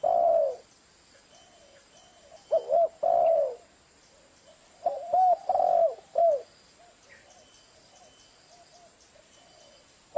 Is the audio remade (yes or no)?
no